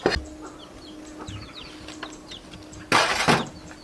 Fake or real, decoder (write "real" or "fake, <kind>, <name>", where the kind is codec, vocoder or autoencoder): real